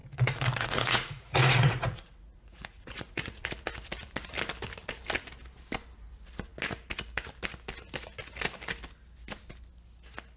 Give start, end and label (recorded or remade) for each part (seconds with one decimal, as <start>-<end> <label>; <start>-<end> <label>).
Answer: 0.0-3.5 remade; 3.5-10.4 recorded